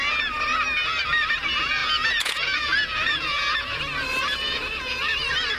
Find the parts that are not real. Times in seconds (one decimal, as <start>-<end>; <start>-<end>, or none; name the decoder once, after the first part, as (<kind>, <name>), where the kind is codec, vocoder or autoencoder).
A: 1.8-3.8 (vocoder, Vocos); 4.4-5.0